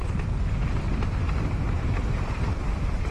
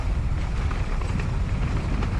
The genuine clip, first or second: first